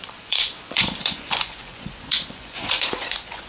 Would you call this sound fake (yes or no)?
yes